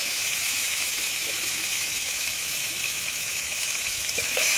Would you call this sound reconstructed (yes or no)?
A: yes